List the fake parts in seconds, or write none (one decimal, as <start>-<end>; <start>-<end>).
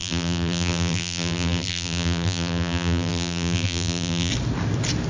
0.0-4.3